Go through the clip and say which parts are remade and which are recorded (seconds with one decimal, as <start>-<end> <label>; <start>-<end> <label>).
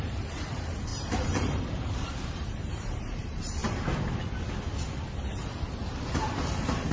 0.0-3.6 remade; 3.6-5.6 recorded; 5.6-6.9 remade